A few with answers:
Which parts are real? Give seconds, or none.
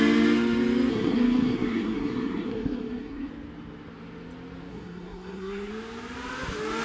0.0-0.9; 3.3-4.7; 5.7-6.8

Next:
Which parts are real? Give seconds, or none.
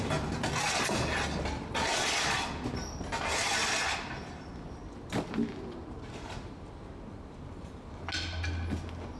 0.0-9.2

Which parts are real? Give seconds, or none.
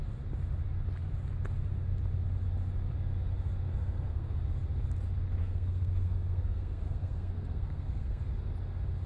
0.0-3.7; 4.3-5.4; 8.2-9.1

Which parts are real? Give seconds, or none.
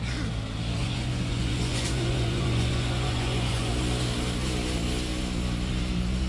0.0-0.8; 3.7-6.3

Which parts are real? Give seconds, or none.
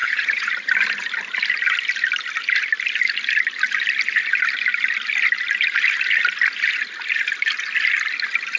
0.5-8.6